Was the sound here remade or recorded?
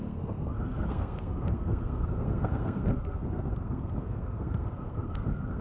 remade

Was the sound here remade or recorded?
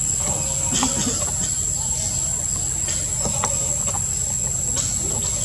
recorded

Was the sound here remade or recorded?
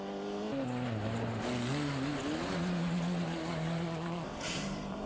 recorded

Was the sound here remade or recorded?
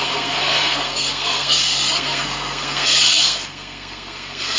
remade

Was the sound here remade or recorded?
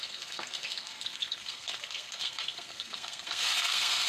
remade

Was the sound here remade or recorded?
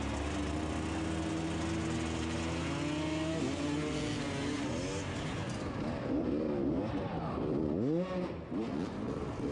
recorded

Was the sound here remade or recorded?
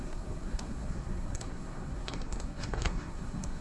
remade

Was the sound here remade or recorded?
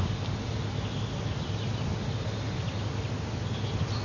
recorded